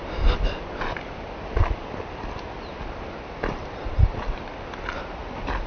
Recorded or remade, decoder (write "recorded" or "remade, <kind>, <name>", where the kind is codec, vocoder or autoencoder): recorded